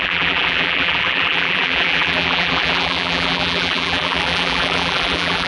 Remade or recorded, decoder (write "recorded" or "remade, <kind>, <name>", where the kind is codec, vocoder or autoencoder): remade, vocoder, BigVGAN v2